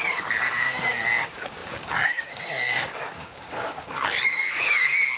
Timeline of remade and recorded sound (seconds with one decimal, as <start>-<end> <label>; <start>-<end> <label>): 0.0-5.2 remade